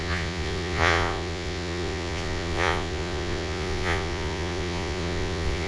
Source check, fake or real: fake